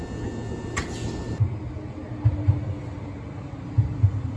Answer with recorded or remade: recorded